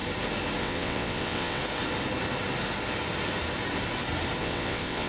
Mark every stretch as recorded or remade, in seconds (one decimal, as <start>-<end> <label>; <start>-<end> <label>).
0.0-0.6 recorded; 0.6-1.6 remade; 1.6-4.4 recorded; 4.4-5.1 remade